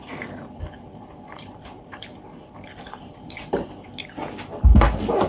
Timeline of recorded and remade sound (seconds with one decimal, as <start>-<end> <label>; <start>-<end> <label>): 0.0-3.9 remade; 3.9-5.3 recorded